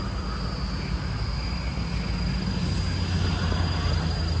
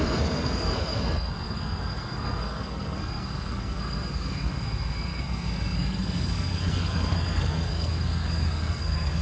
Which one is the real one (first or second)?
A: first